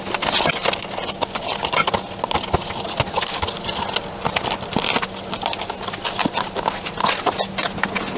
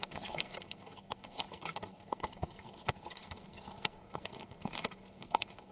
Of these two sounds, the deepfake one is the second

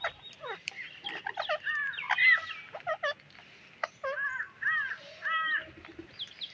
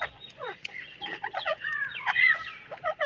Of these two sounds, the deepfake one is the second